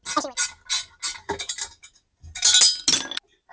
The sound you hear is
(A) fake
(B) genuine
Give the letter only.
B